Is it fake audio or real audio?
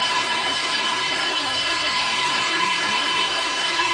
fake